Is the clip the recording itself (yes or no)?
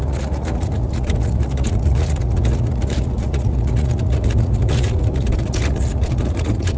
no